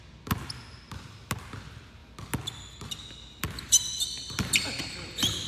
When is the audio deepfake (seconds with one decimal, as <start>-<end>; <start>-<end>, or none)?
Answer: none